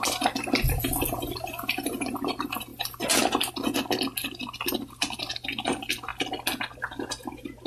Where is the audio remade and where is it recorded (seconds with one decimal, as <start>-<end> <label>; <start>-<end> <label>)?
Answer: 0.0-7.7 recorded